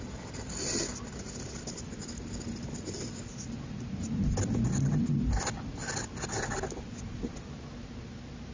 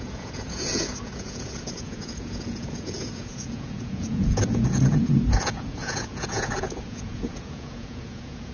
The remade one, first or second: second